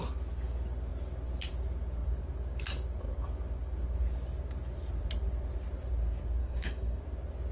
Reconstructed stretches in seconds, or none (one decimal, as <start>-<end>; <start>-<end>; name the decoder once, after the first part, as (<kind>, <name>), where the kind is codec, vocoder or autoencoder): 6.4-7.0 (codec, DAC)

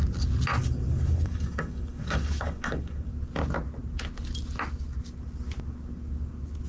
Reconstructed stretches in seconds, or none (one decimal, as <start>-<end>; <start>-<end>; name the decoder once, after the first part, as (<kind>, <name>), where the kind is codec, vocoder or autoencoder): 0.6-3.1 (codec, DAC)

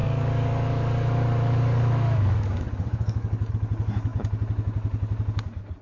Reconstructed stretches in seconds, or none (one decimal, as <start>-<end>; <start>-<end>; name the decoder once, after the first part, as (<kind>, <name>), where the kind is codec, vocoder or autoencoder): 0.0-3.5 (codec, DAC)

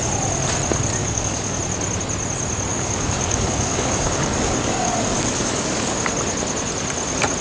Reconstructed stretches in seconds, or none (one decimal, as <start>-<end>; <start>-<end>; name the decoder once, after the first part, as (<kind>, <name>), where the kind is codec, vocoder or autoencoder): 1.0-1.6 (codec, DAC); 2.7-6.1